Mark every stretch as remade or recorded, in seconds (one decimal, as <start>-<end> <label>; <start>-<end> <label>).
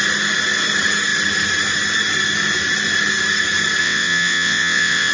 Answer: 0.0-3.8 recorded; 3.8-5.1 remade